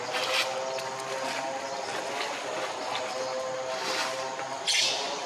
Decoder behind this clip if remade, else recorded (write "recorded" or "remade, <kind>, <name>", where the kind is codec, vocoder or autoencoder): recorded